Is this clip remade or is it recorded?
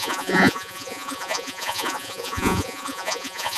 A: remade